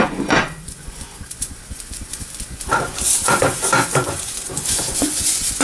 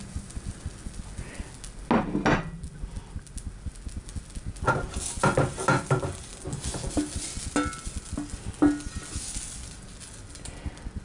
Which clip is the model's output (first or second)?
first